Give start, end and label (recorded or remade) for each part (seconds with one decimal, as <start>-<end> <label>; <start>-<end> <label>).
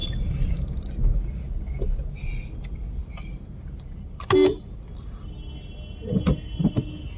0.0-7.2 recorded